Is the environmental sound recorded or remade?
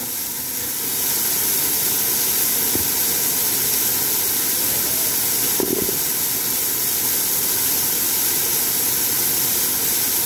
recorded